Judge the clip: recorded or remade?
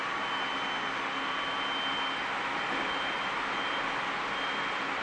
recorded